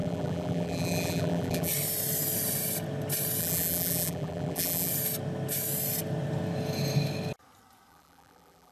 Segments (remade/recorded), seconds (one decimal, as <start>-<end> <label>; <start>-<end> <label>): 0.0-1.7 remade; 1.7-3.4 recorded; 3.4-4.9 remade; 4.9-7.9 recorded; 7.9-8.7 remade